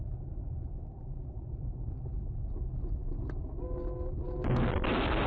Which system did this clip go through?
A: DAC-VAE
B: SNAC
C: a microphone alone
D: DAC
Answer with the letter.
C